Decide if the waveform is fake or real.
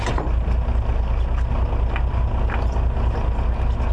real